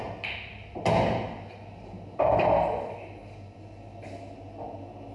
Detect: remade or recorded recorded